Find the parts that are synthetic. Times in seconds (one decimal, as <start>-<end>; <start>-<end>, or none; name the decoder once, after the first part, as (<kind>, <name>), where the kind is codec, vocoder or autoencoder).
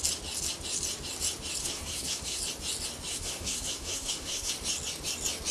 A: 1.6-2.4 (codec, SNAC); 3.1-4.5